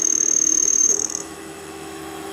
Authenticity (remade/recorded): remade